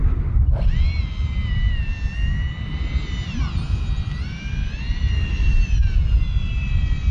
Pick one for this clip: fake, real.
real